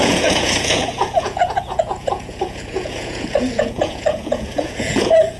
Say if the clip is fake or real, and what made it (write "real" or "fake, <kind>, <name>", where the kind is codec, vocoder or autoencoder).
fake, vocoder, Vocos